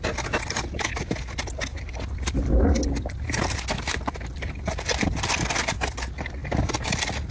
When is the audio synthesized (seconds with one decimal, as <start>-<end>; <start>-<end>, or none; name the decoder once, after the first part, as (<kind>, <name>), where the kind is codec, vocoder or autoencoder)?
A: none